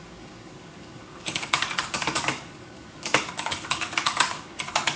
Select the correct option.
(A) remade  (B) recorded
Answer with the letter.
A